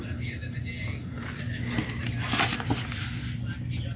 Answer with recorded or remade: recorded